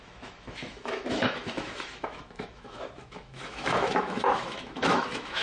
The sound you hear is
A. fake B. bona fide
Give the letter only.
A